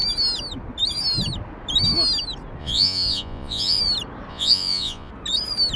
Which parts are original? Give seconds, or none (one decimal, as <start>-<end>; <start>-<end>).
0.0-2.6; 3.8-4.3; 5.1-5.8